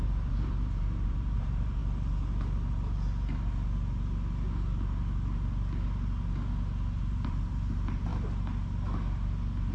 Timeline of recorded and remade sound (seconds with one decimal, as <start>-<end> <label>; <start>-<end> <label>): 0.0-1.8 remade; 1.8-7.0 recorded; 7.0-8.1 remade; 8.1-9.7 recorded